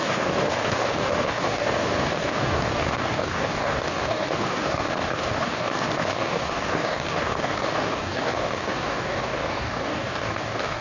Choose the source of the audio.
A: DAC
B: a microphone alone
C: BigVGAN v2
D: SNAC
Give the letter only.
A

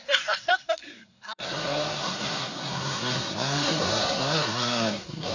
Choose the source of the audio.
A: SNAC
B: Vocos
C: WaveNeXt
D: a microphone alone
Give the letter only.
A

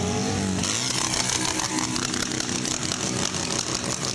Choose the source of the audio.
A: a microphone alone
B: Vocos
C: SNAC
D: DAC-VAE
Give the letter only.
A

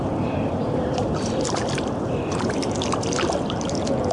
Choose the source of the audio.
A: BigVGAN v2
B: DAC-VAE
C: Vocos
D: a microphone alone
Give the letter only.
D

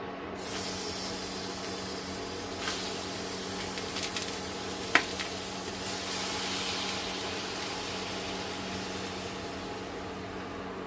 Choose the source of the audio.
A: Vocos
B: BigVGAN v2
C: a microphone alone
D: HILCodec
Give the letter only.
C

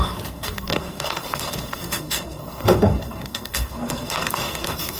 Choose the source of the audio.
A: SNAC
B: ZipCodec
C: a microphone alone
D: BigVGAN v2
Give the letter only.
A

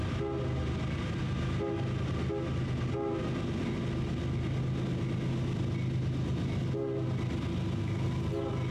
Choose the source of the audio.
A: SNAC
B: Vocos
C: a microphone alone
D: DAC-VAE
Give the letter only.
C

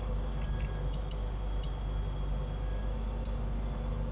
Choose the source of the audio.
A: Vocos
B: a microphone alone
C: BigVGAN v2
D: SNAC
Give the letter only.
B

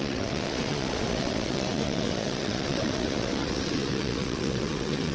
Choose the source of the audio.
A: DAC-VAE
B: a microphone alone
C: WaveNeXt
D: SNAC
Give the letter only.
C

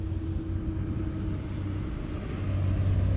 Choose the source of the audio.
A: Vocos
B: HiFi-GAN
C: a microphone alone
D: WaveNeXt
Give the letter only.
C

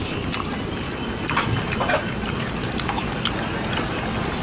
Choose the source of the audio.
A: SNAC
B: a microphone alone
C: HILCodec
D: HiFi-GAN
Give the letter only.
B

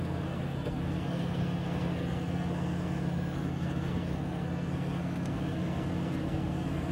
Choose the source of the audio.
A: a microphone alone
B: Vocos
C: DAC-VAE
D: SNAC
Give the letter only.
D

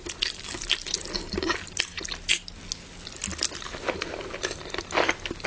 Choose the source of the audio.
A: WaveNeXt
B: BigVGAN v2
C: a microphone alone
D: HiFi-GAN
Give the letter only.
C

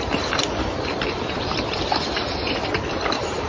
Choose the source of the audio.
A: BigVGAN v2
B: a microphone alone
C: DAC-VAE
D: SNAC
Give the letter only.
A